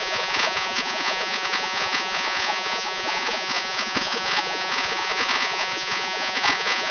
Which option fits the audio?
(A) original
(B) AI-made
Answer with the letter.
B